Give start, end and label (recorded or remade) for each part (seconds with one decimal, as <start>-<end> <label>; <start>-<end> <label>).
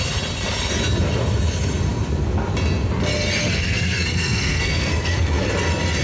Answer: 0.0-3.4 recorded; 3.4-5.4 remade; 5.4-6.0 recorded